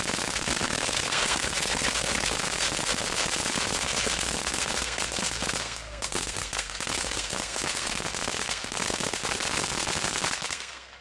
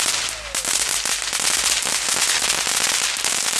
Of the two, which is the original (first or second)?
second